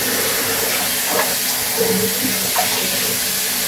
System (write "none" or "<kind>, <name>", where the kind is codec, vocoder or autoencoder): none